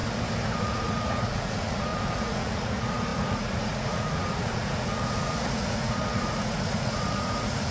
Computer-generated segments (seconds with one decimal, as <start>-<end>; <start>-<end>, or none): 0.6-7.7